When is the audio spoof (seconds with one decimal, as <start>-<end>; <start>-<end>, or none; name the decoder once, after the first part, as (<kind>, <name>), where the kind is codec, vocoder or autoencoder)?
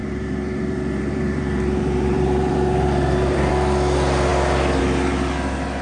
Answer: 0.0-3.5 (vocoder, BigVGAN v2)